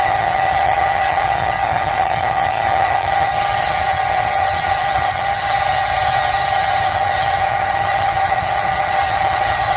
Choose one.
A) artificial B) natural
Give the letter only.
A